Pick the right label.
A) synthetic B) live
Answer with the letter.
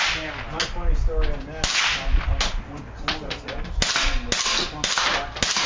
B